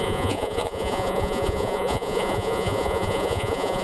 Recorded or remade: remade